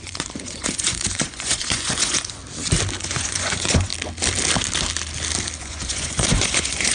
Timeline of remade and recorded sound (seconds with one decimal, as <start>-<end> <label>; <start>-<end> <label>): 0.0-2.4 remade; 2.4-3.0 recorded; 3.0-3.9 remade; 3.9-5.6 recorded; 5.6-6.9 remade